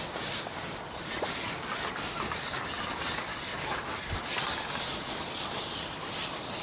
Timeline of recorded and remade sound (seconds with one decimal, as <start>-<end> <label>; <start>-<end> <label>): 0.0-6.6 recorded